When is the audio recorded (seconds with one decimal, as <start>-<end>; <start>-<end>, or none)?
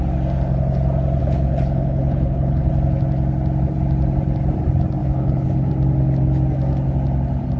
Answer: 0.0-1.2; 2.7-5.0; 5.7-7.6